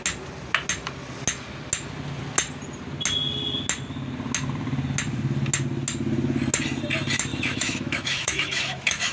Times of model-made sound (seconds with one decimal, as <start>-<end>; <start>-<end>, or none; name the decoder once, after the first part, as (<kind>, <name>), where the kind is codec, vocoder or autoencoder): 7.3-9.1 (autoencoder, DAC-VAE)